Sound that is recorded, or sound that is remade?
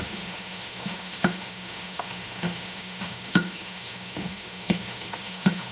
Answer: remade